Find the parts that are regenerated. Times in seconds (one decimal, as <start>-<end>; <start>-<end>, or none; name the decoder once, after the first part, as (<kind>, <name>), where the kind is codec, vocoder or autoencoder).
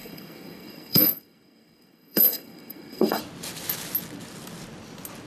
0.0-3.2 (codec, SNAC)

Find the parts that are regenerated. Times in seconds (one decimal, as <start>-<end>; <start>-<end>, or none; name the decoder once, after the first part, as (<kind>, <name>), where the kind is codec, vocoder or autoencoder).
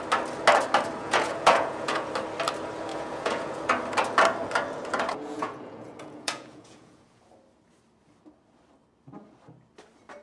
1.0-2.1 (vocoder, Vocos); 2.9-3.6; 5.1-7.2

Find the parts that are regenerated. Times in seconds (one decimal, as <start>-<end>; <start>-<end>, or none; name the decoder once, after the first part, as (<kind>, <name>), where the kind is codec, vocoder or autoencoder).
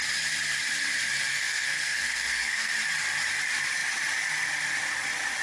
1.3-2.7 (codec, SNAC)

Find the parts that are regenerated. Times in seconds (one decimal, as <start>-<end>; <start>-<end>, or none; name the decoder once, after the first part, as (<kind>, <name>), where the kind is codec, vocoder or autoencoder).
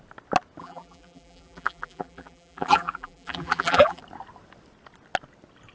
0.6-4.0 (vocoder, BigVGAN v2)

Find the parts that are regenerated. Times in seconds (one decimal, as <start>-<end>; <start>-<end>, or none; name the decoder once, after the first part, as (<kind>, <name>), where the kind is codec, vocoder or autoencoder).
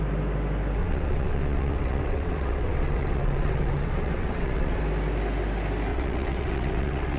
0.8-4.8 (vocoder, WaveNeXt); 5.9-7.2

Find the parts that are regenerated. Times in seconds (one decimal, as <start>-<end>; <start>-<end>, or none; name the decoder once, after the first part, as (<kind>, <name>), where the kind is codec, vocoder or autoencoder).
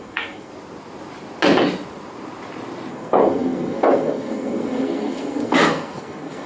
0.0-0.5 (codec, SNAC); 2.9-6.5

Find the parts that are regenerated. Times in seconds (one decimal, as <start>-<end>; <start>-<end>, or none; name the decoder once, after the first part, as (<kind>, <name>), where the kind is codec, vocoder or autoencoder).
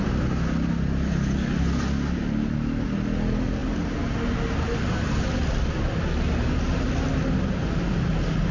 none